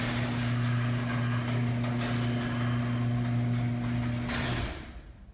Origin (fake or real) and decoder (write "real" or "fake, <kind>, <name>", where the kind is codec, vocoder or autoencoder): real